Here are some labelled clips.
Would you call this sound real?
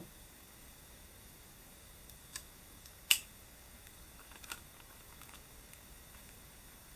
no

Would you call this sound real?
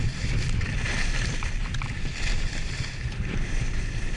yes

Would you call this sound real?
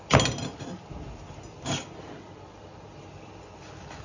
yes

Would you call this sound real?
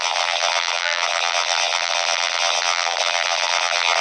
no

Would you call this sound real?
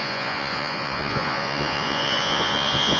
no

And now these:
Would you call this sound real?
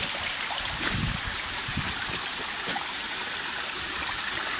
no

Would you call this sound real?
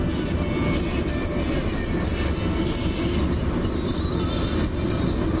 yes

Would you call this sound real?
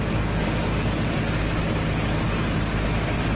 yes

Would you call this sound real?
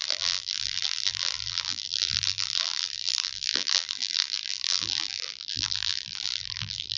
no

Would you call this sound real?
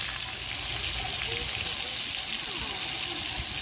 yes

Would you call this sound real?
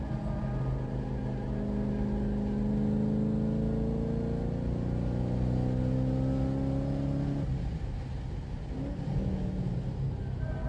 yes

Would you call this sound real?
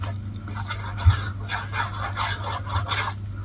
yes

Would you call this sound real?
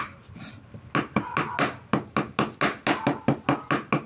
yes